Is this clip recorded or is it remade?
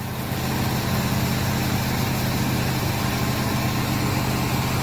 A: recorded